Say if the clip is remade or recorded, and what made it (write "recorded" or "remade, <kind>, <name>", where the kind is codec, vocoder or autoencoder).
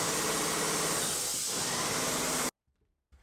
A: recorded